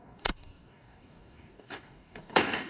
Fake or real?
fake